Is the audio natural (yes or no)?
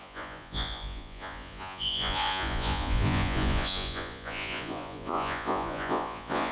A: no